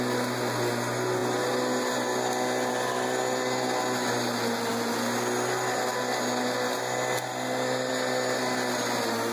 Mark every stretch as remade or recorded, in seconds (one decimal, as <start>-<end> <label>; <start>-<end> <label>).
0.0-9.3 recorded